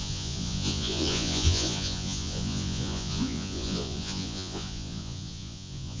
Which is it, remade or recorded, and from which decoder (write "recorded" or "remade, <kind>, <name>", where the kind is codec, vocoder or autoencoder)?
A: remade, vocoder, Vocos